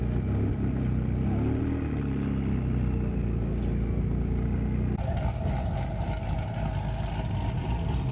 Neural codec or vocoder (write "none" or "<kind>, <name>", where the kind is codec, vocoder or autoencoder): none